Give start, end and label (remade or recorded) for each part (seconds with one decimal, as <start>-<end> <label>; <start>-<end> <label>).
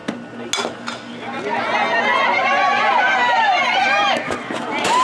0.0-3.0 recorded; 3.0-5.0 remade